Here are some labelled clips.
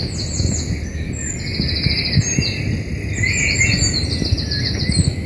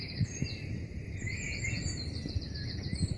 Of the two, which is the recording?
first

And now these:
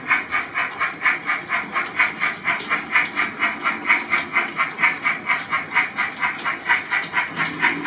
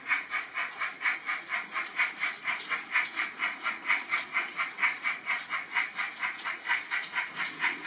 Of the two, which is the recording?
first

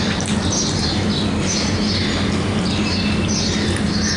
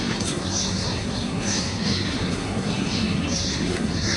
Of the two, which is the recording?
first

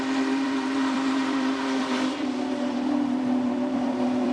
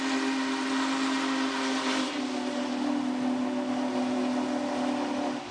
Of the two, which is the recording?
second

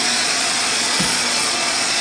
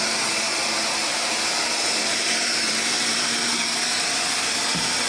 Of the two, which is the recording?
second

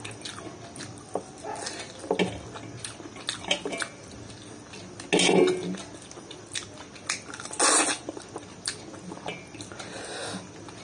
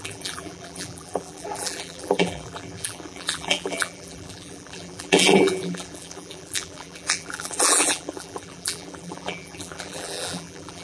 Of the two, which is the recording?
first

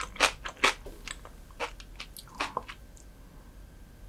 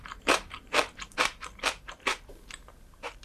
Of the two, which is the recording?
first